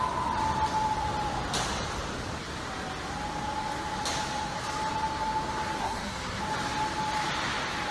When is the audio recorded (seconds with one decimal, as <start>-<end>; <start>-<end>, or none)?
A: 0.0-5.8; 6.4-7.9

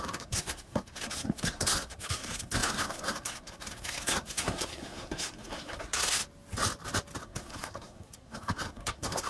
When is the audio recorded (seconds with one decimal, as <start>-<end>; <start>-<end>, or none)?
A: 6.2-7.2